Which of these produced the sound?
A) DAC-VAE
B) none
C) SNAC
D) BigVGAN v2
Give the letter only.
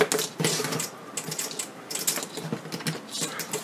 B